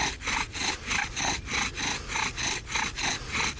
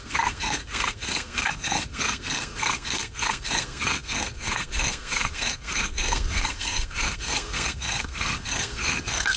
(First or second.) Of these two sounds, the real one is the first